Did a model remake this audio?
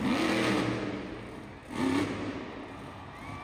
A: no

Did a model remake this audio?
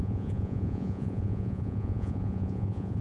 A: yes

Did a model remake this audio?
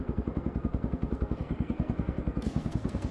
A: yes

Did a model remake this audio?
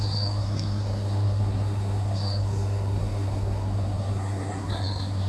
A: yes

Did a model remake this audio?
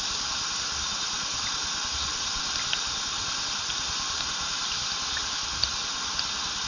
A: no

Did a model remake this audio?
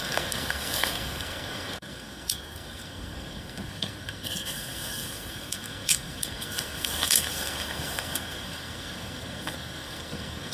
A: yes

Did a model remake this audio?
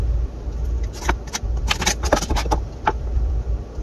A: no